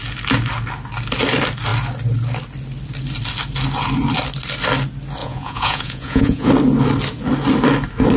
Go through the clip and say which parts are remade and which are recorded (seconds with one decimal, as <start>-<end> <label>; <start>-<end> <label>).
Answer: 0.0-5.2 recorded; 5.2-6.5 remade; 6.5-8.2 recorded